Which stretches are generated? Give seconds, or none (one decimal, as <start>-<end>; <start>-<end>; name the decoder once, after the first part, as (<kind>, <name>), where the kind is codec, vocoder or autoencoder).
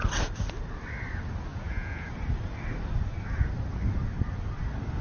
1.5-2.1 (vocoder, Vocos)